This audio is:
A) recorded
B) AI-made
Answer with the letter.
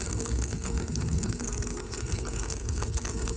B